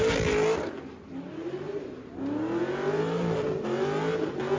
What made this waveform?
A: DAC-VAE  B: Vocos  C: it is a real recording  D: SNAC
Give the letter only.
C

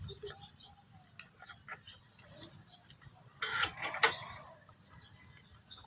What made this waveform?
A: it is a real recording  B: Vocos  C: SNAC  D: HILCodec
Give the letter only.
A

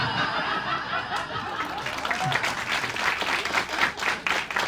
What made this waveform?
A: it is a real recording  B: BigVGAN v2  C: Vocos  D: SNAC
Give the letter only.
A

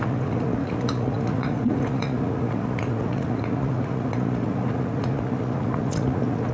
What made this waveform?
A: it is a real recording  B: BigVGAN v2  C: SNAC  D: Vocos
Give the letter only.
D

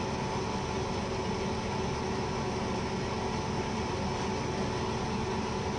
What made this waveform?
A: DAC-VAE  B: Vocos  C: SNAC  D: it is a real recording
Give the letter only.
D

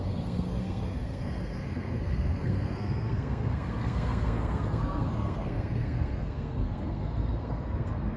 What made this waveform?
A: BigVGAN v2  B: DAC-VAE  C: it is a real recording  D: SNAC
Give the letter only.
D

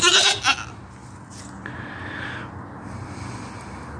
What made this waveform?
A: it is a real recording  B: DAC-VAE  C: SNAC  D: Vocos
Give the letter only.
A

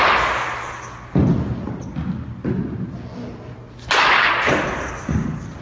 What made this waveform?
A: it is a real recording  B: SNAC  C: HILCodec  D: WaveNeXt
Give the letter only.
A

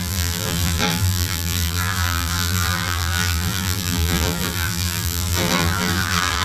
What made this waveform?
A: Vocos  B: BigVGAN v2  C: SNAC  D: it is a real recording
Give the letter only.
B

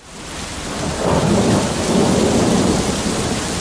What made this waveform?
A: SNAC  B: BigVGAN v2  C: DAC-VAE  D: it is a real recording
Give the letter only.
D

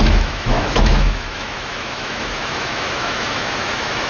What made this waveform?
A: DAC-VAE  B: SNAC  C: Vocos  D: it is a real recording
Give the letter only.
A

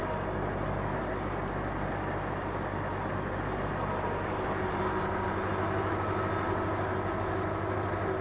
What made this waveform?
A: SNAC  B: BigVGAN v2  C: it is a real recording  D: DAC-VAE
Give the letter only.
C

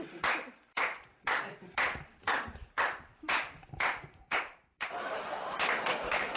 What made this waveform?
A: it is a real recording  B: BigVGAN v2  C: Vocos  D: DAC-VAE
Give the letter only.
B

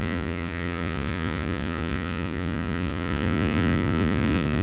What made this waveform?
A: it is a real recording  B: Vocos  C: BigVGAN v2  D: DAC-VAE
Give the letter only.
B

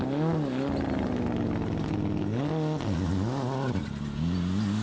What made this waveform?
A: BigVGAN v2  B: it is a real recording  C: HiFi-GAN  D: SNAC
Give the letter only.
B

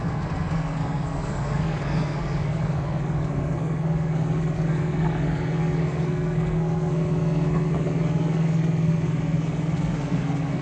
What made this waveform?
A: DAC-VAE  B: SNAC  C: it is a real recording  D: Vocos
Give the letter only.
B